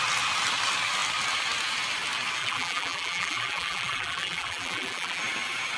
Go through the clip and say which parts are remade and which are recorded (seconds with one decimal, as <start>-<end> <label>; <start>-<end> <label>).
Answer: 0.0-2.4 recorded; 2.4-5.2 remade; 5.2-5.8 recorded